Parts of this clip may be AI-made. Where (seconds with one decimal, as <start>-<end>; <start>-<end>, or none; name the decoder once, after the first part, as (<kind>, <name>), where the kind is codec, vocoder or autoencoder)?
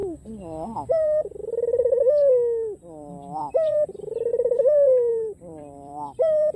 0.0-1.5 (vocoder, BigVGAN v2); 3.4-6.6